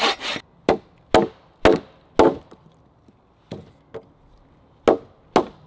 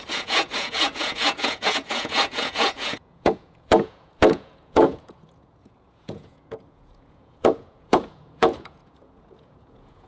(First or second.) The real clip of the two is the first